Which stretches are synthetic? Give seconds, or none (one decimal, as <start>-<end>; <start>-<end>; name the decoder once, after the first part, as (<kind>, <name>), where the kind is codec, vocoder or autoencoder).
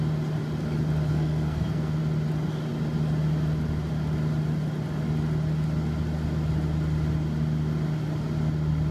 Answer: 1.1-2.0 (codec, SNAC)